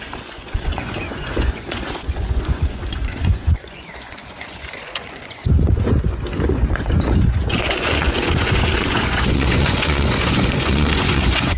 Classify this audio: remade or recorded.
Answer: remade